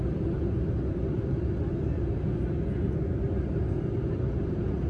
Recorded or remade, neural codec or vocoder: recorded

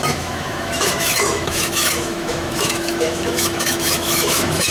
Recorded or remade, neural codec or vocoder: remade, autoencoder, DAC-VAE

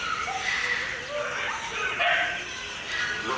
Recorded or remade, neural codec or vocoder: recorded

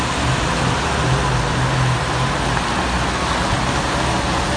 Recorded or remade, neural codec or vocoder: recorded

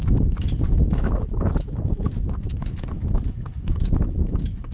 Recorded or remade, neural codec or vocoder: remade, autoencoder, DAC-VAE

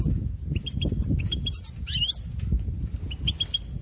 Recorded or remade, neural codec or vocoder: recorded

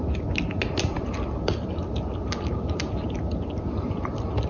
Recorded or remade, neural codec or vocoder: recorded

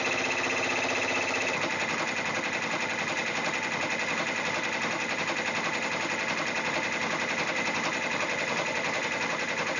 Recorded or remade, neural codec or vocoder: recorded